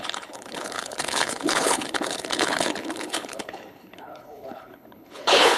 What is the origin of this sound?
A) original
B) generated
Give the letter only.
B